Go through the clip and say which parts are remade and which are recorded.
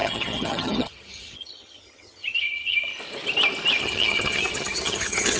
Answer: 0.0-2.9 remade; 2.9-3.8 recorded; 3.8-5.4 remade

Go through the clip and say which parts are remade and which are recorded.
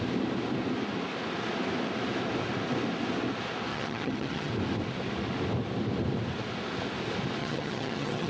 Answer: 0.0-3.7 recorded; 3.7-4.5 remade; 4.5-7.4 recorded; 7.4-8.3 remade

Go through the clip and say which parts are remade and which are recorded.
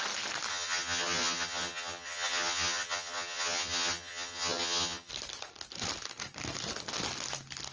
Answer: 0.0-0.5 recorded; 0.5-5.1 remade; 5.1-7.7 recorded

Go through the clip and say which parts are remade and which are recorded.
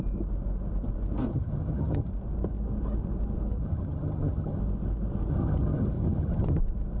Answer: 0.0-1.3 recorded; 1.3-2.1 remade; 2.1-3.6 recorded; 3.6-4.6 remade; 4.6-5.3 recorded; 5.3-6.6 remade; 6.6-7.0 recorded